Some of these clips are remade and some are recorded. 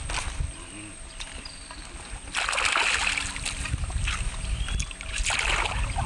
recorded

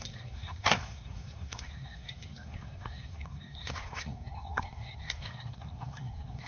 remade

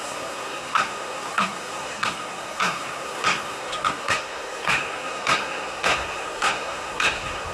remade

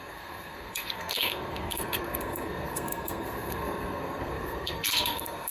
remade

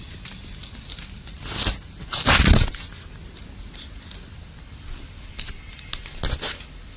recorded